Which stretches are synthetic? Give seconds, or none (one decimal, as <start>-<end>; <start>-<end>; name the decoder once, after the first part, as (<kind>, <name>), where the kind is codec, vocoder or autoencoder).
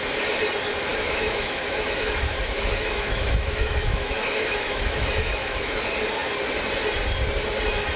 0.9-5.7 (autoencoder, DAC-VAE)